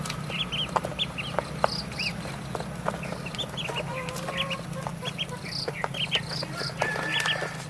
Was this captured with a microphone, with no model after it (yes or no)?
yes